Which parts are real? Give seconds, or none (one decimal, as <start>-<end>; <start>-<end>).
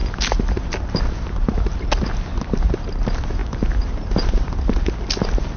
0.0-3.4; 4.9-5.6